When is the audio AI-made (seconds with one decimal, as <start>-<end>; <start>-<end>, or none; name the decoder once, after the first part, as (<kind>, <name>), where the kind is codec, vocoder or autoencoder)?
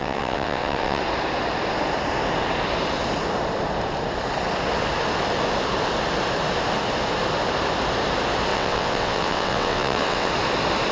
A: 0.0-1.0 (vocoder, WaveNeXt); 8.5-10.3